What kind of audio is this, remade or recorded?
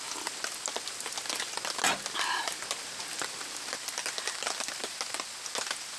recorded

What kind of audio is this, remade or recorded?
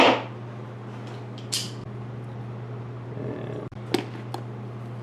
recorded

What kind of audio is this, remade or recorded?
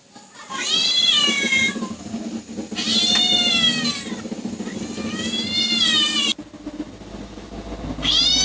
recorded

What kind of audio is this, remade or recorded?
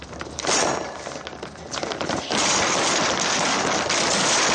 recorded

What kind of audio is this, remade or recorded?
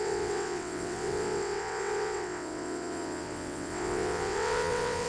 remade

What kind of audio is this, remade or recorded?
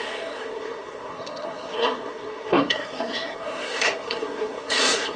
remade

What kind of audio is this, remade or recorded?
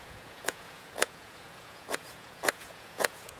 remade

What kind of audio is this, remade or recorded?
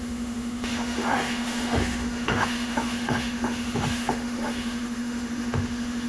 remade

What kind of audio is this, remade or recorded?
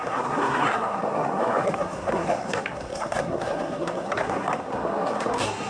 remade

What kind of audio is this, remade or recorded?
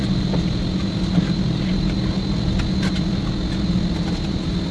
recorded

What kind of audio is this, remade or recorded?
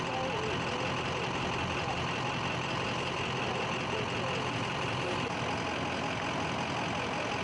recorded